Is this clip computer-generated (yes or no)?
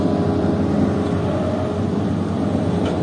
no